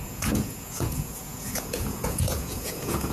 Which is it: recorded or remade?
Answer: remade